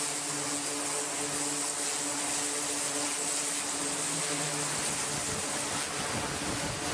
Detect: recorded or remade recorded